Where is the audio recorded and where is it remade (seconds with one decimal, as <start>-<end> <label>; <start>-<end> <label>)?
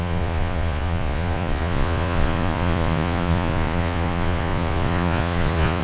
0.0-5.8 remade